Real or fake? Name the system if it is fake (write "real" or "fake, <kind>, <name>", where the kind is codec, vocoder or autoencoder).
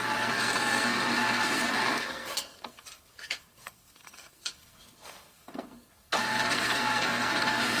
fake, codec, SNAC